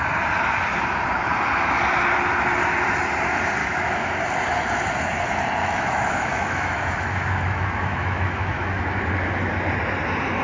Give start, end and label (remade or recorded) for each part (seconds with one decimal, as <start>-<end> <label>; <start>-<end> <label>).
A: 0.0-3.6 recorded; 3.6-4.2 remade; 4.2-5.6 recorded; 5.6-9.0 remade; 9.0-10.4 recorded